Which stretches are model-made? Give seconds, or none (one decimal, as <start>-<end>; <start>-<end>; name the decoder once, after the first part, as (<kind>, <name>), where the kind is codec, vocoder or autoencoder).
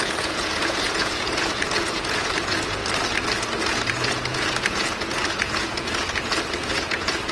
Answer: 0.0-2.8 (vocoder, Vocos); 3.6-7.3